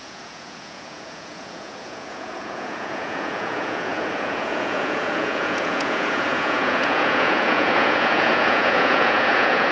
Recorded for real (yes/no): no